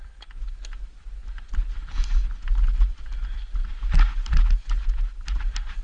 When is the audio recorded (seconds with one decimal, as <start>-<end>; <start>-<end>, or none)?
0.0-5.8